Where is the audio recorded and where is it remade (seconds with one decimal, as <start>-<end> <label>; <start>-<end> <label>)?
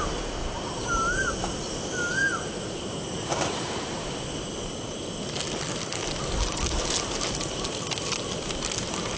0.0-0.4 recorded; 0.4-1.3 remade; 1.3-2.2 recorded; 2.2-4.2 remade; 4.2-9.2 recorded